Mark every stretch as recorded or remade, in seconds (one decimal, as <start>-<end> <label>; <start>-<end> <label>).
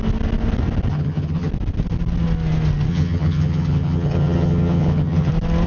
0.0-0.9 recorded; 0.9-1.5 remade; 1.5-2.9 recorded; 2.9-5.3 remade; 5.3-5.7 recorded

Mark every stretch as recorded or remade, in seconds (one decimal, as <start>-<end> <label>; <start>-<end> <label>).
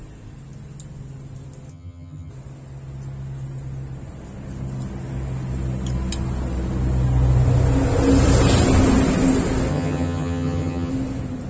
0.0-1.7 recorded; 1.7-2.3 remade; 2.3-9.7 recorded; 9.7-10.9 remade; 10.9-11.5 recorded